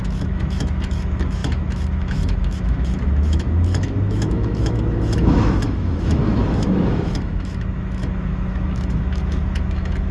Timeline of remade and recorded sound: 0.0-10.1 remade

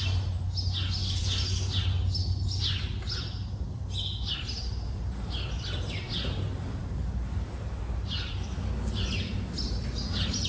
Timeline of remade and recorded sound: 0.0-10.5 recorded

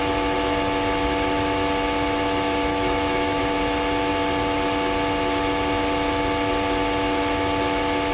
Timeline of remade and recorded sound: 0.0-2.7 recorded; 2.7-3.4 remade; 3.4-8.1 recorded

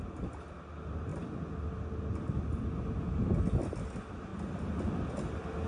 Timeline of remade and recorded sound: 0.0-5.7 recorded

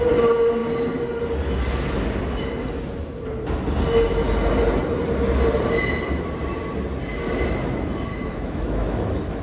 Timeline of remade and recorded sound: 0.0-8.1 recorded; 8.1-9.4 remade

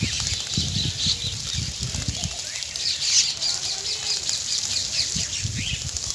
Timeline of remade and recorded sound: 0.0-6.1 recorded

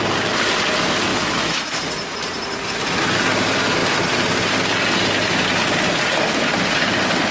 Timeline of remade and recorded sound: 0.0-1.1 recorded; 1.1-1.8 remade; 1.8-7.3 recorded